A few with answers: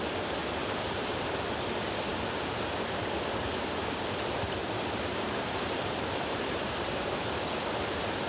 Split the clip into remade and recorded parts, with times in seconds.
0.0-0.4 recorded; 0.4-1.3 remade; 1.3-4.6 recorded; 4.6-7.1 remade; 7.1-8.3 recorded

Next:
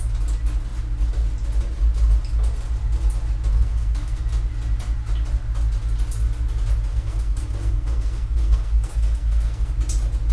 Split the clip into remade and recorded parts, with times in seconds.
0.0-3.5 recorded; 3.5-4.2 remade; 4.2-6.9 recorded; 6.9-9.7 remade; 9.7-10.3 recorded

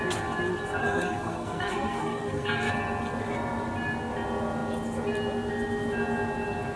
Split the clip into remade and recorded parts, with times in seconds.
0.0-0.8 recorded; 0.8-2.7 remade; 2.7-6.8 recorded

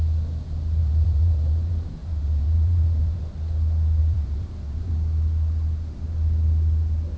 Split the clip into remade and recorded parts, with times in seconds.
0.0-0.8 recorded; 0.8-3.2 remade; 3.2-4.0 recorded; 4.0-4.9 remade; 4.9-7.2 recorded

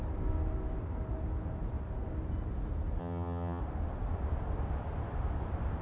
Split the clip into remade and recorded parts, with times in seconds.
0.0-3.0 recorded; 3.0-3.6 remade; 3.6-5.8 recorded

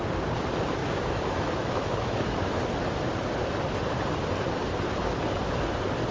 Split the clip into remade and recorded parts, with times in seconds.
0.0-0.8 recorded; 0.8-2.6 remade; 2.6-6.1 recorded

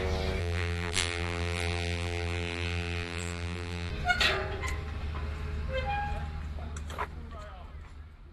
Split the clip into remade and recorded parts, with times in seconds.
0.0-0.4 recorded; 0.4-3.9 remade; 3.9-8.3 recorded

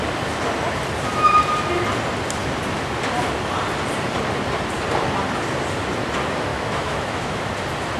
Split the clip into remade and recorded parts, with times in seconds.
0.0-6.5 recorded; 6.5-7.5 remade; 7.5-8.0 recorded